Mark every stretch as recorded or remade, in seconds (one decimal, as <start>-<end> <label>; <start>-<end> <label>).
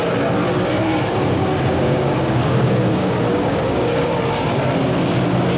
0.0-1.1 recorded; 1.1-4.2 remade; 4.2-5.6 recorded